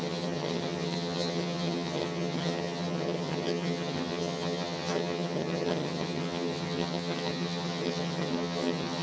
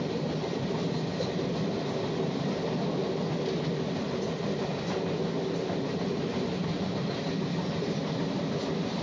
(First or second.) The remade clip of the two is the first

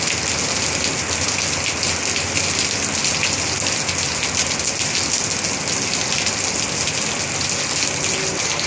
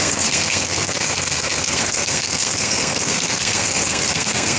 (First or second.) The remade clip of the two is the second